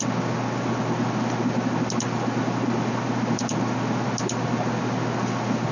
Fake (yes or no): no